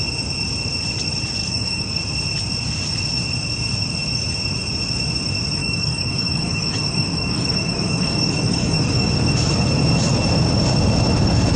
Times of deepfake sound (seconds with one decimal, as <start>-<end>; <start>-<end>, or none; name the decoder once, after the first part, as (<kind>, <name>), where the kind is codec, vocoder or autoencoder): 1.4-2.0 (codec, DAC); 5.6-9.1